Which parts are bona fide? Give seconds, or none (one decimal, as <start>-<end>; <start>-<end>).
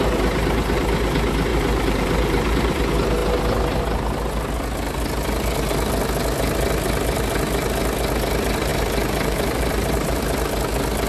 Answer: 0.0-1.5; 2.8-8.7; 10.2-11.1